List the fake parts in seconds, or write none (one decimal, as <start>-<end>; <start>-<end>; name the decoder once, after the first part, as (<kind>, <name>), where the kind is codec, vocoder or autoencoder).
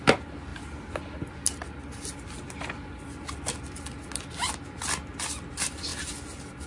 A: none